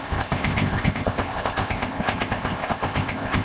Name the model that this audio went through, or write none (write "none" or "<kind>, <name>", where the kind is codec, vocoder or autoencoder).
codec, ZipCodec